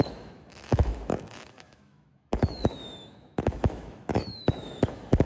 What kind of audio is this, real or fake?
fake